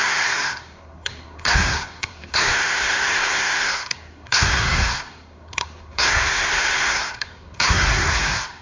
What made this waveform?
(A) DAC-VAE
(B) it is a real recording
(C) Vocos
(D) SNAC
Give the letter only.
D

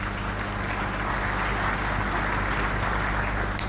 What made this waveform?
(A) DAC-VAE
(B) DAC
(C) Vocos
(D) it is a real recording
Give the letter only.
D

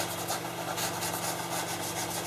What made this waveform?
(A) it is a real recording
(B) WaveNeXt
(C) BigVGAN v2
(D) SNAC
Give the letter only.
A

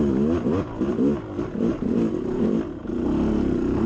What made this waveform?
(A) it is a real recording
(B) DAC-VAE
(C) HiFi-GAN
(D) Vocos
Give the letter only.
A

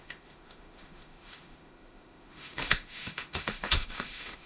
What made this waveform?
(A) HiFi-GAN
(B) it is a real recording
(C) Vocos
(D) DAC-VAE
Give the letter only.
D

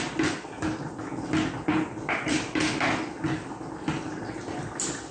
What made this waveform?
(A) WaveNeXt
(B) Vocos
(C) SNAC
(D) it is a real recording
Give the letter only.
D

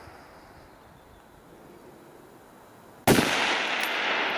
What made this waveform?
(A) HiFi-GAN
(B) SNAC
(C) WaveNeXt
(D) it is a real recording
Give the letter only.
D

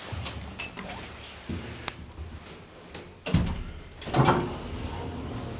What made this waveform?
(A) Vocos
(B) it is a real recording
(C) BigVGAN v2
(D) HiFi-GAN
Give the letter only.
B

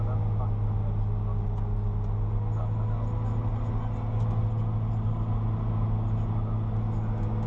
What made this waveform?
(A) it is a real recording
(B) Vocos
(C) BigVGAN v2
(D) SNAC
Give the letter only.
A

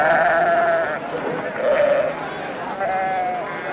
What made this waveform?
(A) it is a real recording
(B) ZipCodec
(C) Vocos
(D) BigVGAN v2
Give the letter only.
A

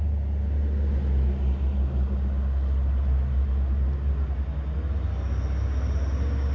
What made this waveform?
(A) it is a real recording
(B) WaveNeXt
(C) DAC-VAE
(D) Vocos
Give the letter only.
A